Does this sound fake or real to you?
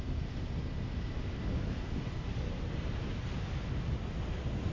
real